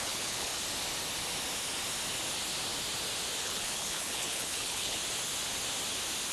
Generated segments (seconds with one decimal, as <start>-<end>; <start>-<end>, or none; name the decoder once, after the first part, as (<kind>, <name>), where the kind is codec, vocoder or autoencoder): 0.0-0.5 (codec, HILCodec); 3.4-5.0